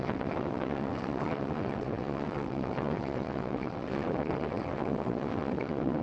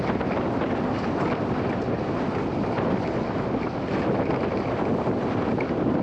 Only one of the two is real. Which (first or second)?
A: second